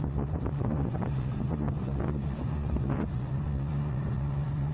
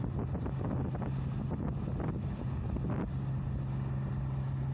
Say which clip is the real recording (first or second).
second